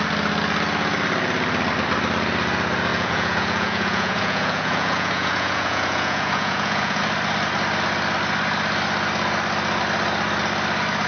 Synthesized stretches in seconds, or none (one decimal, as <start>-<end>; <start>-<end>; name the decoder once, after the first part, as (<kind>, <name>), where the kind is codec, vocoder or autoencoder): 2.9-7.0 (vocoder, Vocos)